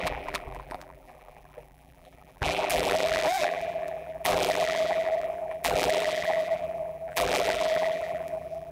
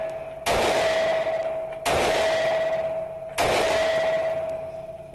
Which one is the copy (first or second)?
first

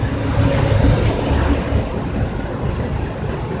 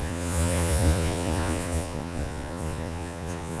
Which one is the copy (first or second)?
second